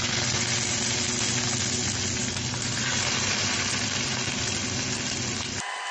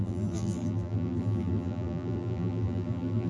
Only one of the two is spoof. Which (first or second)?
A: second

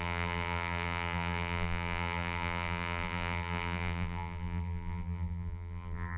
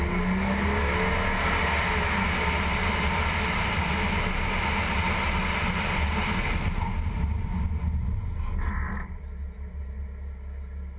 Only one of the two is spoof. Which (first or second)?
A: first